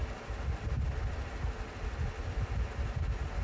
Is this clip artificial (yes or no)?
no